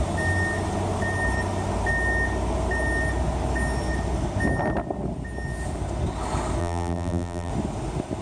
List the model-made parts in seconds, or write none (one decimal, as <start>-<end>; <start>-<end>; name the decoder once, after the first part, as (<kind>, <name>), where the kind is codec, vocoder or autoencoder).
6.6-7.5 (vocoder, BigVGAN v2)